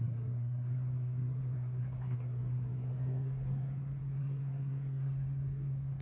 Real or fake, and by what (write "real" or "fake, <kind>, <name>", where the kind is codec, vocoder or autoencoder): fake, codec, SNAC